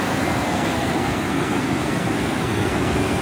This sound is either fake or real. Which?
fake